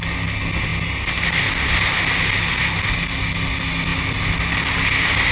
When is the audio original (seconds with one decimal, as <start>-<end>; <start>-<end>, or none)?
0.0-5.3

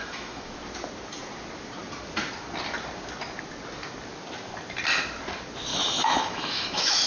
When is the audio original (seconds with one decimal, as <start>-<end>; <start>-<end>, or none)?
0.5-5.7

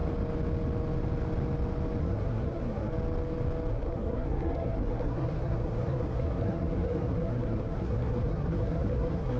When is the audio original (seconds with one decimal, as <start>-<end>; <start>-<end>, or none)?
0.0-2.0; 2.9-3.7

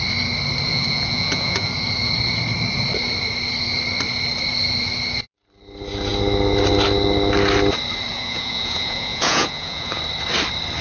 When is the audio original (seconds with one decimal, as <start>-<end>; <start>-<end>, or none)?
0.0-0.7; 1.7-8.1; 10.0-10.8

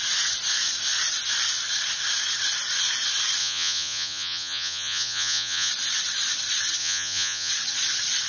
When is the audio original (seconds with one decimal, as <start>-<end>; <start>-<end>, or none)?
0.0-3.4; 5.7-6.8; 7.5-8.3

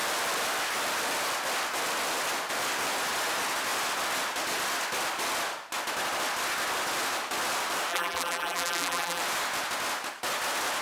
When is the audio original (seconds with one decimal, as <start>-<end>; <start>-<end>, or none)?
0.0-7.9; 9.2-10.8

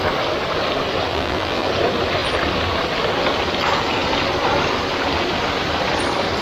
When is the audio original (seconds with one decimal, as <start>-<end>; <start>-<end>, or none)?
0.0-1.1; 1.7-6.4

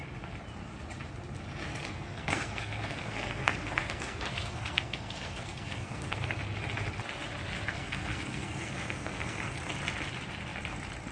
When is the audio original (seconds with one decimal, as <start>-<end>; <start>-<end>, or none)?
0.0-1.8; 6.4-7.7; 9.6-11.1